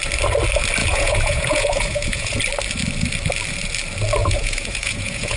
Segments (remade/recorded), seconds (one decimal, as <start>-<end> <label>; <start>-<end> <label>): 0.0-0.8 recorded; 0.8-2.4 remade; 2.4-4.2 recorded; 4.2-5.4 remade